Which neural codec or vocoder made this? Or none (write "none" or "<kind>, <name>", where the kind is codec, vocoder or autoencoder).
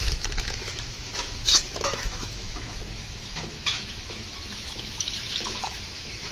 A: autoencoder, DAC-VAE